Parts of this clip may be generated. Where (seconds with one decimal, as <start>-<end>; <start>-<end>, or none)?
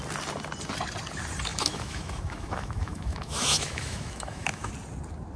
1.5-4.7